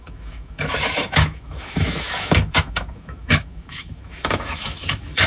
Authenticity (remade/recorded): remade